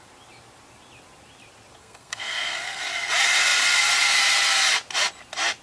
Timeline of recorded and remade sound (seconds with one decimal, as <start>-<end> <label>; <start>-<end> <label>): 0.0-1.8 recorded; 1.8-2.8 remade; 2.8-5.6 recorded